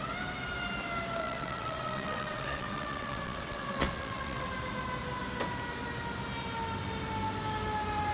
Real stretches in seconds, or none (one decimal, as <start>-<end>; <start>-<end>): 0.0-1.2; 4.5-8.1